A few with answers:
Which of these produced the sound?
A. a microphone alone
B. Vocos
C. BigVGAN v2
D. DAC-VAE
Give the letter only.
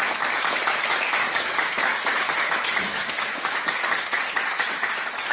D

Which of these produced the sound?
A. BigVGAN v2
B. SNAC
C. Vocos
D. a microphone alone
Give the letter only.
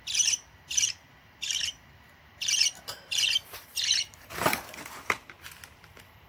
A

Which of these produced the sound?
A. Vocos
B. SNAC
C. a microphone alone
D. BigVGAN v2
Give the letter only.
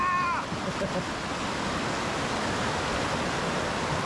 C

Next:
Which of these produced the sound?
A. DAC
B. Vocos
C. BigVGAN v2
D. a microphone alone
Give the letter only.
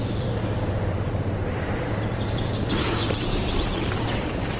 C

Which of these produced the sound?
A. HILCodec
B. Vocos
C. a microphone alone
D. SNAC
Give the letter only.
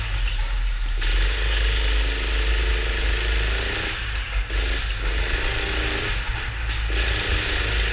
C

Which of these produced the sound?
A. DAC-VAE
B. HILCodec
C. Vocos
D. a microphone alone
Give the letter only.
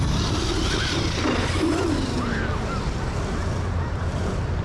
D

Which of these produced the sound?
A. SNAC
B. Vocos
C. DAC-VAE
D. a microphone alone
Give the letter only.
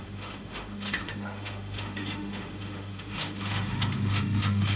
C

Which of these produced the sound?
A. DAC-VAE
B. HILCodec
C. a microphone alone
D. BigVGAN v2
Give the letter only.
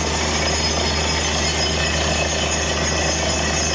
C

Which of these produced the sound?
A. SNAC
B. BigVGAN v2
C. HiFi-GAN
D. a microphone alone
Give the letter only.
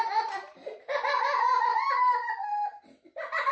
D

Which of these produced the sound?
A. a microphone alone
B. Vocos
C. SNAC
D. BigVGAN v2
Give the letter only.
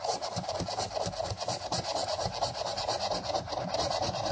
A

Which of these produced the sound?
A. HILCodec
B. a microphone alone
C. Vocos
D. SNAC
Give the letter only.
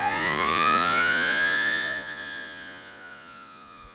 C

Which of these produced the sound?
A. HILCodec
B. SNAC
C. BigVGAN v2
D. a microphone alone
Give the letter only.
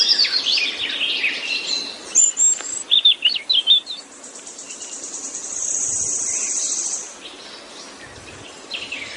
D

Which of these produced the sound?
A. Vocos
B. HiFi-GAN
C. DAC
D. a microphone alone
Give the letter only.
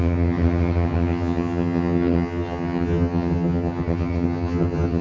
B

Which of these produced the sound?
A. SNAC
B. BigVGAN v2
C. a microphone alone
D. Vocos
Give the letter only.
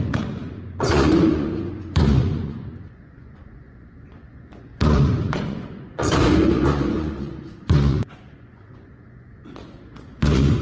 D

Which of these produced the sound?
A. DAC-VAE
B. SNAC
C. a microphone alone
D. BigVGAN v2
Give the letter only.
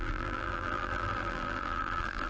D